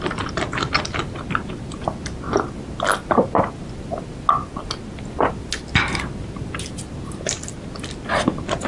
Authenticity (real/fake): real